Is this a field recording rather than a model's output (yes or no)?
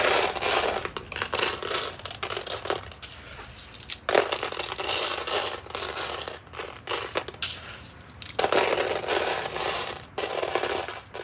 yes